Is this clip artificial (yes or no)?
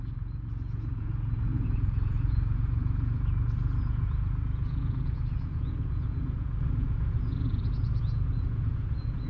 yes